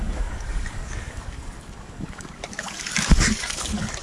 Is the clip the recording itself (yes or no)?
no